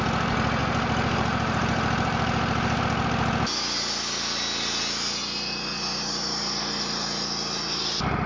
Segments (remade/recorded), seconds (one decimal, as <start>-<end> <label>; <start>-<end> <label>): 0.0-0.6 recorded; 0.6-2.8 remade; 2.8-8.3 recorded